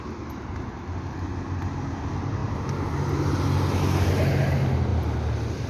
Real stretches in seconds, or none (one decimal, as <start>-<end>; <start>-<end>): 0.0-5.7